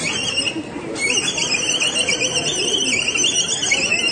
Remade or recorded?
recorded